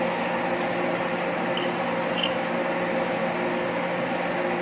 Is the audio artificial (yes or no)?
no